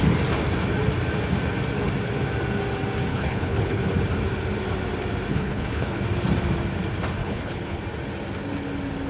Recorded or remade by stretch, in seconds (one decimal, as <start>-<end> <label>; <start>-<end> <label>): 0.0-3.1 recorded; 3.1-3.8 remade; 3.8-5.3 recorded; 5.3-6.0 remade; 6.0-7.2 recorded; 7.2-7.8 remade; 7.8-9.1 recorded